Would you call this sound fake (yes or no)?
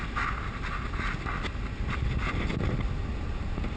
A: no